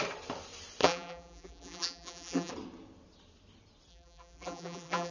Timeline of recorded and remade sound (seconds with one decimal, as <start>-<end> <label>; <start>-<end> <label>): 0.0-0.8 recorded; 0.8-2.5 remade; 2.5-3.9 recorded; 3.9-5.1 remade